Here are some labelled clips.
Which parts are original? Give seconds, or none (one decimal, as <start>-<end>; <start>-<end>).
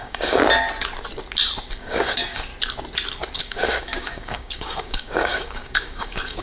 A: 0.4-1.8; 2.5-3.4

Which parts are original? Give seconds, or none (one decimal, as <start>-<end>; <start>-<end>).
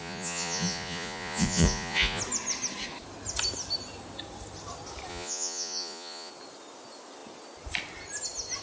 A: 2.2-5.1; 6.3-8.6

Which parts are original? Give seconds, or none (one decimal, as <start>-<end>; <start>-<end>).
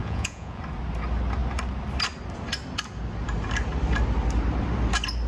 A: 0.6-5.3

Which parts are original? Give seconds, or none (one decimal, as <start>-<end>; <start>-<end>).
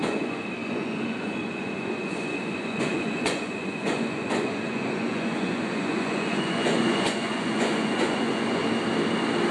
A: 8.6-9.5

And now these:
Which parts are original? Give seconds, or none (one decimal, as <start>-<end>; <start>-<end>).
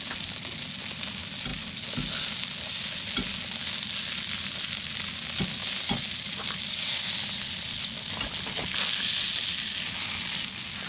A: 0.0-10.9